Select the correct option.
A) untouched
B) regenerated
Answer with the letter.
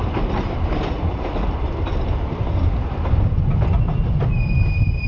A